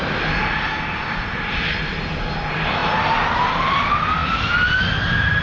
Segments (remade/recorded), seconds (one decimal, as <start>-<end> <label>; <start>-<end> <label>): 0.0-5.4 recorded